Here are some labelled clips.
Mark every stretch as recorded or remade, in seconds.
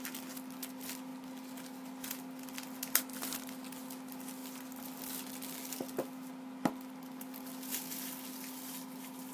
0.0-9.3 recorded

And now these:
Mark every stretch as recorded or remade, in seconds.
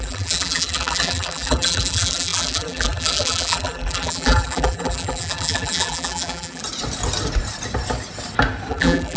0.0-6.6 remade; 6.6-8.7 recorded; 8.7-9.2 remade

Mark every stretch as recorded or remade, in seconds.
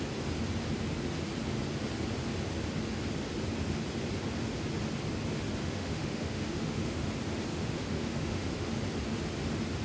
0.0-5.6 recorded; 5.6-7.1 remade; 7.1-7.5 recorded; 7.5-8.7 remade; 8.7-9.8 recorded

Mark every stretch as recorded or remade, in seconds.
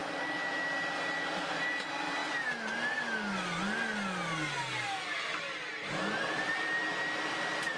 0.0-1.4 recorded; 1.4-2.2 remade; 2.2-5.7 recorded; 5.7-7.8 remade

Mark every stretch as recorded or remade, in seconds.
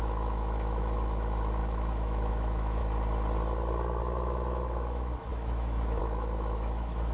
0.0-2.8 remade; 2.8-4.0 recorded; 4.0-7.1 remade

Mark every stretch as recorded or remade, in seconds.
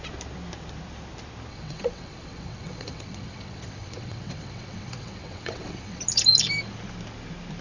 0.0-1.5 recorded; 1.5-6.0 remade; 6.0-7.6 recorded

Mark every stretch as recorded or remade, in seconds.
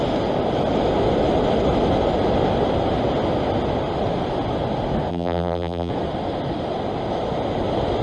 0.0-5.1 recorded; 5.1-5.9 remade; 5.9-8.0 recorded